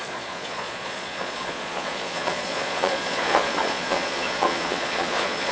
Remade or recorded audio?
remade